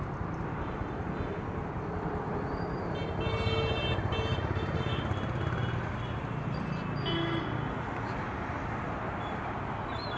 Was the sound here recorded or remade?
recorded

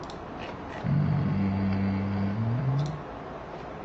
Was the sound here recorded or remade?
recorded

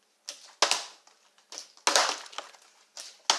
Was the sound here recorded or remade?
recorded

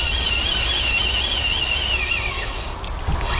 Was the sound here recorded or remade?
recorded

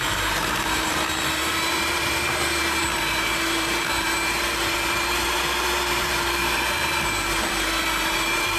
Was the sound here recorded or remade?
remade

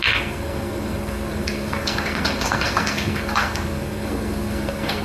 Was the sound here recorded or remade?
remade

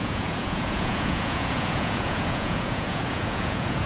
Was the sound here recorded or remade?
remade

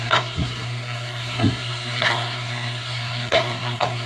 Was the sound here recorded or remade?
remade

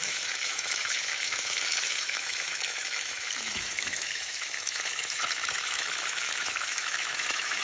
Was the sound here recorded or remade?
remade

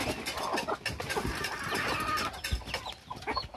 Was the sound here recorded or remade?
recorded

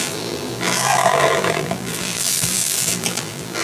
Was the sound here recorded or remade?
remade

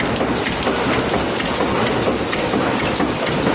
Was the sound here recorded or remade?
recorded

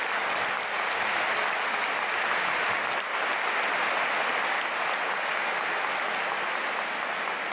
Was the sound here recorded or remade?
recorded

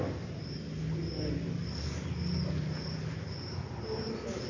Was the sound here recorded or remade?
recorded